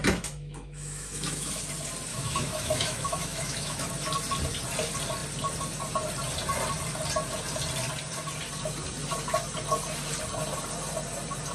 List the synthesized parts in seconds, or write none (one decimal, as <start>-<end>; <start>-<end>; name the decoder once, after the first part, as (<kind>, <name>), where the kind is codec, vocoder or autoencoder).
0.0-1.6 (autoencoder, DAC-VAE); 2.1-3.9